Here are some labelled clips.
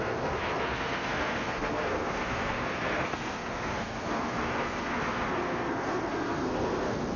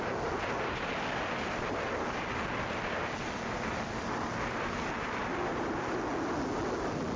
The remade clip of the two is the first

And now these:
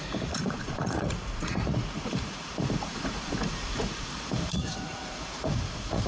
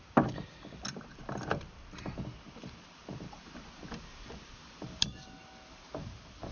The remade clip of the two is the first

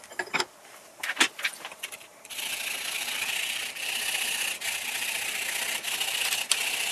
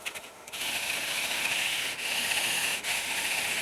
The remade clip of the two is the second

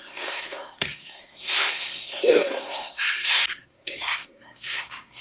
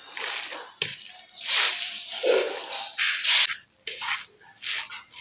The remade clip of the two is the first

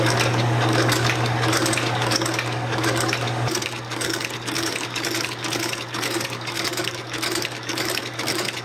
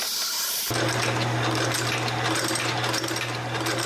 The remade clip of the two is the first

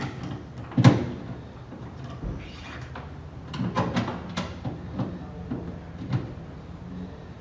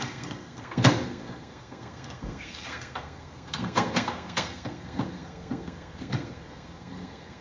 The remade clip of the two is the second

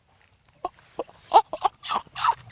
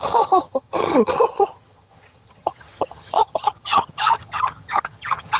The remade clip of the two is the second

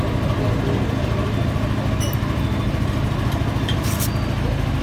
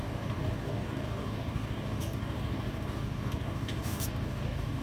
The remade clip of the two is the second